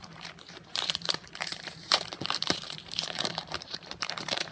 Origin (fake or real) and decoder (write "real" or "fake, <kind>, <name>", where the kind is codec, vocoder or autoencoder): fake, vocoder, BigVGAN v2